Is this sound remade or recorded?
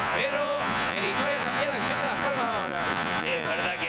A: remade